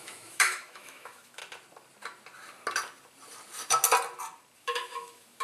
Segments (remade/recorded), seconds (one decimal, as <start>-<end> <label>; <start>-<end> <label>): 0.0-1.4 remade; 1.4-4.6 recorded; 4.6-5.4 remade